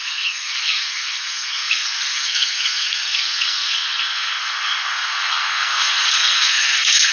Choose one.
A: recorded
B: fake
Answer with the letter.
B